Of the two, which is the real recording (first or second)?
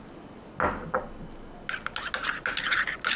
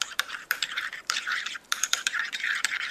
first